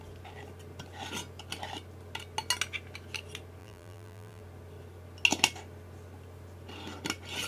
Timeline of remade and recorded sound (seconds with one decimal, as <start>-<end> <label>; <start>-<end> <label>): 0.0-3.6 recorded; 3.6-4.4 remade; 4.4-7.5 recorded